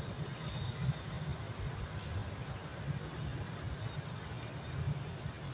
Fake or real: real